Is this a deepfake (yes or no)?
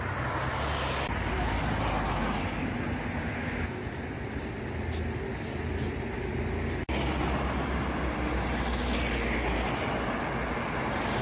no